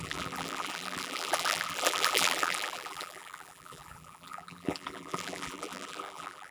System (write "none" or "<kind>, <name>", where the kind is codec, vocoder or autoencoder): vocoder, BigVGAN v2